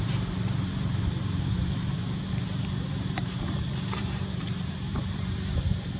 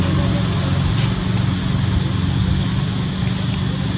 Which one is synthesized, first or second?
first